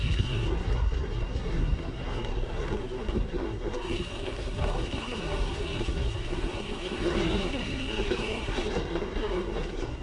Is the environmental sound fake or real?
fake